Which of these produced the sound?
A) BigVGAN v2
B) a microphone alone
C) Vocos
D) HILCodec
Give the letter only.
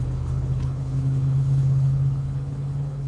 D